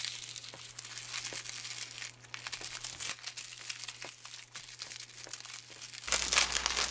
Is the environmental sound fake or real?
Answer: real